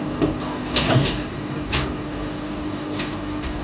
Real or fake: fake